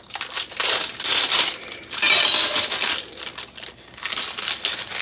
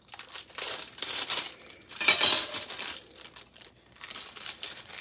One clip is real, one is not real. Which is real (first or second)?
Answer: first